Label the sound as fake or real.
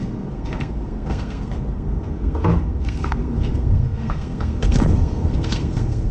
fake